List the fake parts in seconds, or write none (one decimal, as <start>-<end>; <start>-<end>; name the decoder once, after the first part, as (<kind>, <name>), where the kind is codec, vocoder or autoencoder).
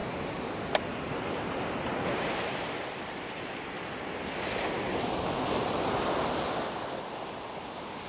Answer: none